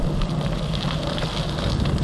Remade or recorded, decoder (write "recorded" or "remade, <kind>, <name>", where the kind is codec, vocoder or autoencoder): recorded